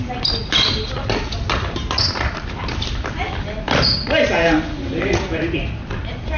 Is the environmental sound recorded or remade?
recorded